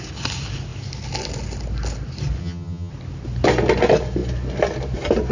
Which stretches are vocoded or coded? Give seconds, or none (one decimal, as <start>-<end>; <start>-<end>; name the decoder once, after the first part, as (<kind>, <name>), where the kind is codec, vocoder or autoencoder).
2.4-2.9 (vocoder, HiFi-GAN)